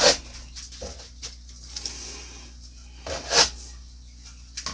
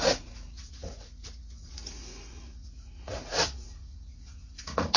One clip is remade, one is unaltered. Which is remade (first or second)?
second